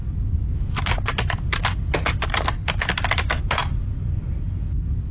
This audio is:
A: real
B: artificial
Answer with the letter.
A